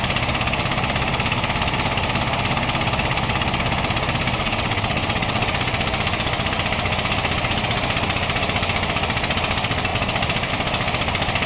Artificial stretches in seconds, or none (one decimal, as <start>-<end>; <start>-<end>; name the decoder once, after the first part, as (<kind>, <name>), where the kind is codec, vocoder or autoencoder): 4.4-5.5 (vocoder, WaveNeXt)

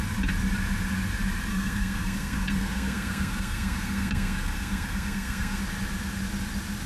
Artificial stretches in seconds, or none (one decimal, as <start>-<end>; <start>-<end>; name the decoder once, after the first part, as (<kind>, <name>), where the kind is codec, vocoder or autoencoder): 1.5-5.6 (codec, SNAC)

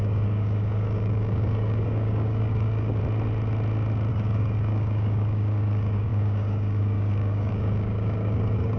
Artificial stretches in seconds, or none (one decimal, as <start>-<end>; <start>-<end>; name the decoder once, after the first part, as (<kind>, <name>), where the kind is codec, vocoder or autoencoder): 0.0-3.0 (codec, DAC); 4.1-8.8

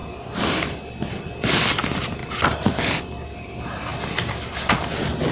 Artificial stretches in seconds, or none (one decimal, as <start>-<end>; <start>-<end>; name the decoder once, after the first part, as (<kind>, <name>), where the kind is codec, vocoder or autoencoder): 1.2-2.2 (vocoder, BigVGAN v2); 3.0-3.9

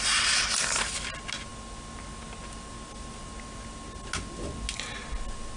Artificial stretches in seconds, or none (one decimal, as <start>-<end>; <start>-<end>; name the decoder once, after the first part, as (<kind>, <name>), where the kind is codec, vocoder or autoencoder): none

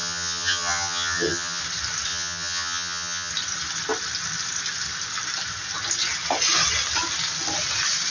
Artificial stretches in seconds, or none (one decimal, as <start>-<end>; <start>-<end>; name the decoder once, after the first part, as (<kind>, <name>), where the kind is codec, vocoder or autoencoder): 0.0-1.6 (vocoder, HiFi-GAN); 2.1-3.3